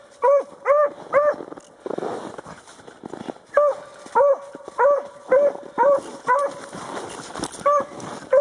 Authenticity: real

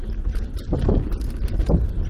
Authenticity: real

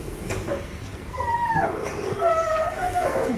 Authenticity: fake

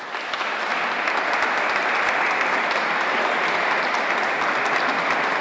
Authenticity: real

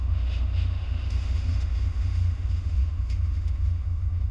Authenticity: fake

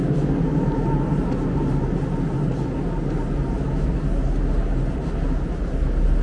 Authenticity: real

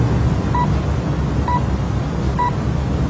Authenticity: real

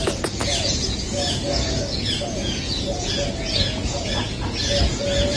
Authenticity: fake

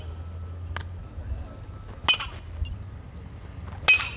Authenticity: real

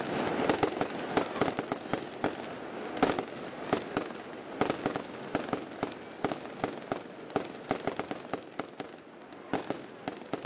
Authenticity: real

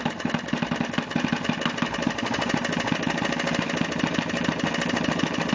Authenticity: real